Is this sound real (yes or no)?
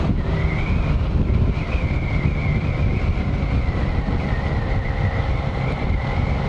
yes